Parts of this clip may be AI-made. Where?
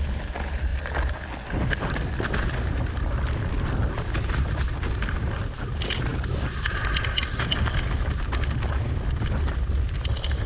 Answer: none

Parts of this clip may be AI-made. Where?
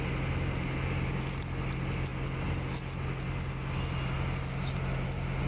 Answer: none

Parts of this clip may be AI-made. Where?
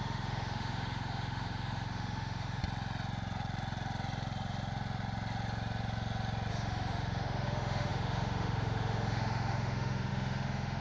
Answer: 0.0-2.6 (autoencoder, DAC-VAE); 6.5-10.8